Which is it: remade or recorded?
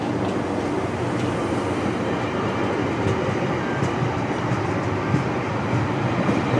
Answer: remade